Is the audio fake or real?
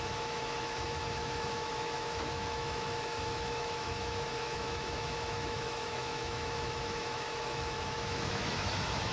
fake